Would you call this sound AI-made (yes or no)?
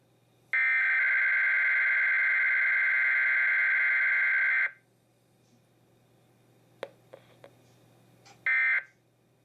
no